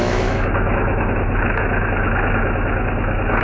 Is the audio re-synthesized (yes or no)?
yes